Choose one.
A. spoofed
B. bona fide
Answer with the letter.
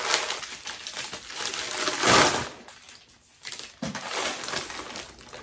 B